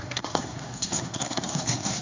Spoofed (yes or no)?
yes